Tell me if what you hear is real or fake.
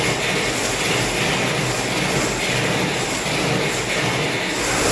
real